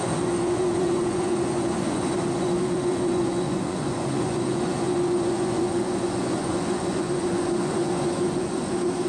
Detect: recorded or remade remade